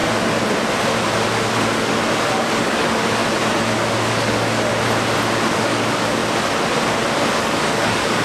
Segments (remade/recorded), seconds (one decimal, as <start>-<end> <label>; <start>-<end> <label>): 0.0-1.5 recorded; 1.5-3.2 remade; 3.2-4.0 recorded; 4.0-4.7 remade; 4.7-5.5 recorded; 5.5-6.2 remade; 6.2-7.4 recorded; 7.4-8.2 remade